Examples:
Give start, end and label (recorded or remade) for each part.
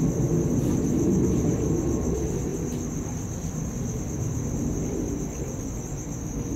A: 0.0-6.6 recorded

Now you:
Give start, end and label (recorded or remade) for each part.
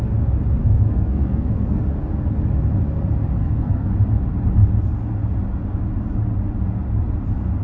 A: 0.0-0.6 recorded; 0.6-1.8 remade; 1.8-3.4 recorded; 3.4-3.9 remade; 3.9-7.6 recorded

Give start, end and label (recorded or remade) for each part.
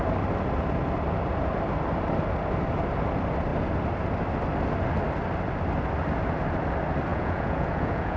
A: 0.0-7.1 recorded; 7.1-8.2 remade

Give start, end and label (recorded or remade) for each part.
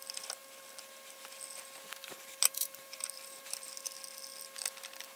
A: 0.0-2.0 recorded; 2.0-3.7 remade; 3.7-5.2 recorded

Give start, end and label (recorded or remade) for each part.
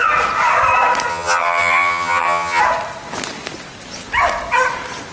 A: 0.0-1.1 recorded; 1.1-2.6 remade; 2.6-5.1 recorded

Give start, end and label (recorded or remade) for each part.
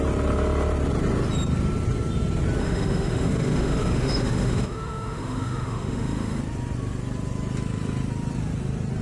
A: 0.0-2.6 recorded; 2.6-6.4 remade; 6.4-9.0 recorded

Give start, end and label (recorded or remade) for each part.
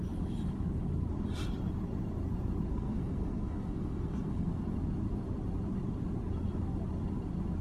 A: 0.0-2.7 recorded; 2.7-4.6 remade; 4.6-7.6 recorded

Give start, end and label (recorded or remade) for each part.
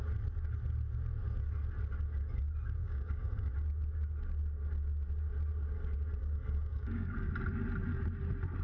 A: 0.0-2.8 recorded; 2.8-3.5 remade; 3.5-6.2 recorded; 6.2-7.3 remade; 7.3-8.6 recorded